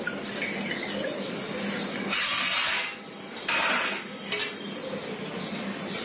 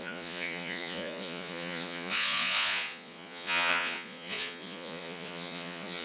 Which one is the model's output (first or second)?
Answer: second